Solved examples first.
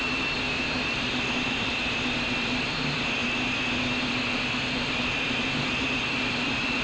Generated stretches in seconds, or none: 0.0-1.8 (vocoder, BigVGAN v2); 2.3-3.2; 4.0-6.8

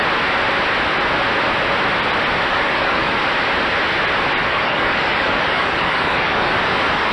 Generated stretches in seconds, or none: 2.5-3.1 (codec, DAC); 4.4-7.1

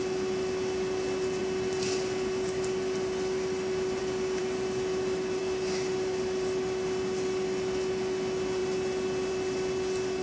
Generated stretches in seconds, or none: 4.4-5.4 (vocoder, BigVGAN v2)

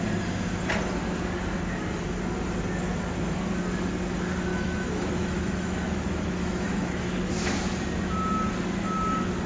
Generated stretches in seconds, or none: 4.5-7.3 (autoencoder, DAC-VAE)

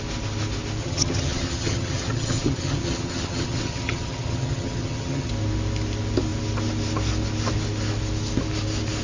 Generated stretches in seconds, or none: 0.8-5.3 (vocoder, HiFi-GAN)